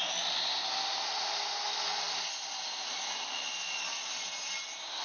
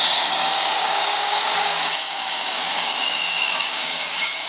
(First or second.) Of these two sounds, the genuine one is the first